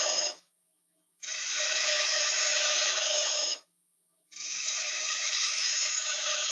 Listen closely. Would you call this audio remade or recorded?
remade